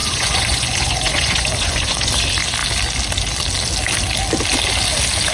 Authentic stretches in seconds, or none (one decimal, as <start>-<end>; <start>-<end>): 2.1-5.3